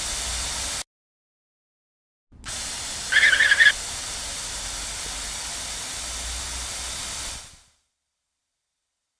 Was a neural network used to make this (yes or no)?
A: no